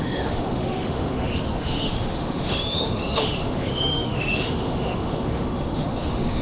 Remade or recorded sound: remade